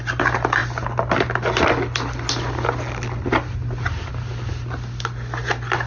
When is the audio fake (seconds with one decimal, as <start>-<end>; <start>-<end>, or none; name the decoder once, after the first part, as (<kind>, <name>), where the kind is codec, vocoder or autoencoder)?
none